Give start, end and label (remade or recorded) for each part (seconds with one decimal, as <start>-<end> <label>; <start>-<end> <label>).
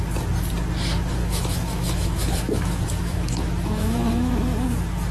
0.0-1.2 recorded; 1.2-4.3 remade; 4.3-5.1 recorded